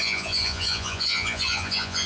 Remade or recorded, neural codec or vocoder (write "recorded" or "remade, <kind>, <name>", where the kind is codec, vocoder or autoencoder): remade, vocoder, Vocos